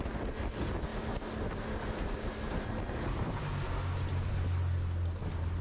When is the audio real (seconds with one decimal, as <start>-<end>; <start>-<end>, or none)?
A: 0.0-5.6